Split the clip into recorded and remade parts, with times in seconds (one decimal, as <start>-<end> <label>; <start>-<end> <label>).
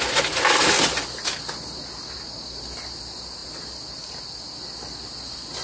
0.0-5.6 recorded